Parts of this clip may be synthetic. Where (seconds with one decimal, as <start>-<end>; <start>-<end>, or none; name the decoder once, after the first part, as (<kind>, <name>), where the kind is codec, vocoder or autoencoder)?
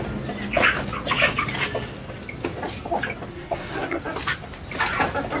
3.3-4.0 (codec, SNAC)